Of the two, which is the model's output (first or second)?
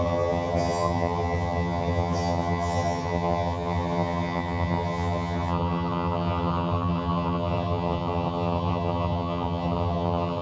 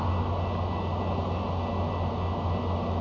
first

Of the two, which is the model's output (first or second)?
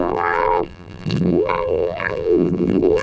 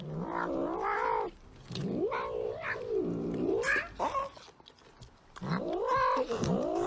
first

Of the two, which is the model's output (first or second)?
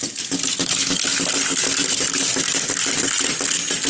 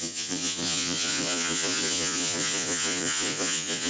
second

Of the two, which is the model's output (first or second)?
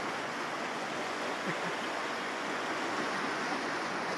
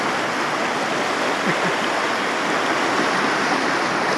first